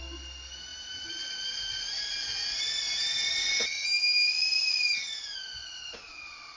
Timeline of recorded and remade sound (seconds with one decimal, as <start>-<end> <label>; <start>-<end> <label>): 0.0-5.6 recorded; 5.6-6.6 remade